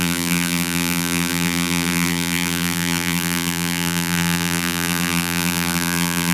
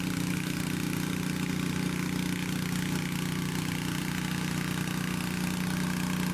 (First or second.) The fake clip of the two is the first